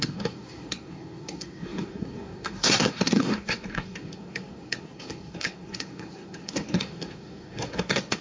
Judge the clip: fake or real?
fake